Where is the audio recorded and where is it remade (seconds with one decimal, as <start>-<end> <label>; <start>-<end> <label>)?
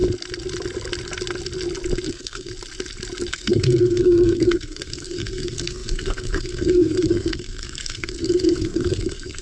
0.0-2.1 recorded; 2.1-2.5 remade; 2.5-3.3 recorded; 3.3-9.4 remade